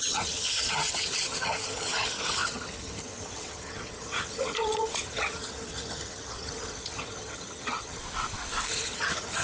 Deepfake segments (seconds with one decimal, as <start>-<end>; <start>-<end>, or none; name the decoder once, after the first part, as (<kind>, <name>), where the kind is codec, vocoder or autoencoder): 0.0-8.0 (vocoder, HiFi-GAN); 8.7-9.4